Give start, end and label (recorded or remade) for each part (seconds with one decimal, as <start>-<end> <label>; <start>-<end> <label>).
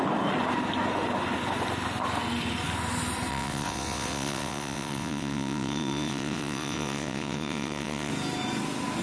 0.0-3.3 recorded; 3.3-8.1 remade; 8.1-9.0 recorded